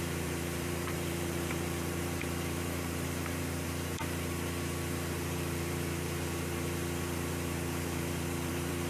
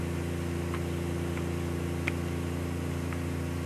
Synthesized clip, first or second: first